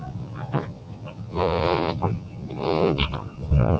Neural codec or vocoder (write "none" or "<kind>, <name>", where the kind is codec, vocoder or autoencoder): vocoder, Vocos